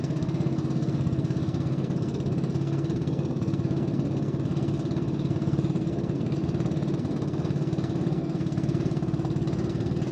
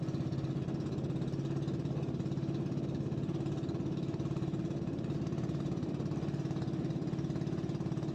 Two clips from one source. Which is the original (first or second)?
second